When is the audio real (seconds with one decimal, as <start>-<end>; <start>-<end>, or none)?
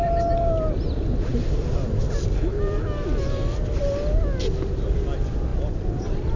0.0-6.4